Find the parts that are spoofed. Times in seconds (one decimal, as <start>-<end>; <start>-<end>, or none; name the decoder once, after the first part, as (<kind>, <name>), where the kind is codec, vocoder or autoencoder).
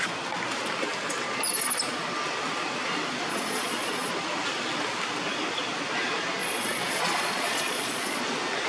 3.3-4.1 (vocoder, Vocos); 6.4-8.2